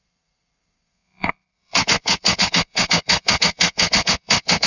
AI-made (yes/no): yes